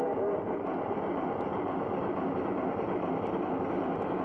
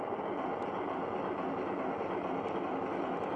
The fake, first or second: first